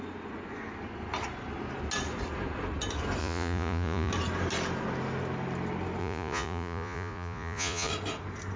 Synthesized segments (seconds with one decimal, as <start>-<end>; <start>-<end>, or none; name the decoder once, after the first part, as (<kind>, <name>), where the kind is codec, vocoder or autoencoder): 3.2-4.1 (vocoder, Vocos); 6.0-7.9